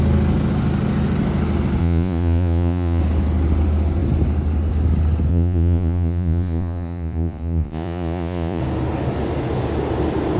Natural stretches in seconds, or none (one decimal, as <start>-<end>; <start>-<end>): 0.0-1.8; 3.0-5.3; 8.6-10.4